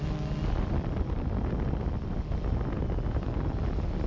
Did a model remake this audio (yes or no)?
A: no